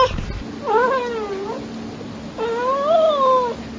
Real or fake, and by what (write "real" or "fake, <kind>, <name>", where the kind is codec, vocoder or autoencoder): real